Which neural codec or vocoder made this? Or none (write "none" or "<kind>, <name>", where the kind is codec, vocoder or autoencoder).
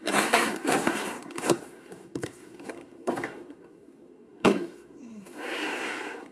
codec, SNAC